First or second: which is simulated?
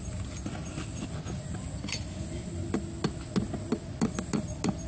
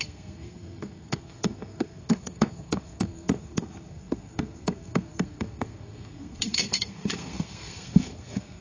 second